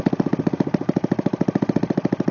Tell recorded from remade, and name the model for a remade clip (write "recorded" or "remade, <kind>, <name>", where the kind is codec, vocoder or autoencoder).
recorded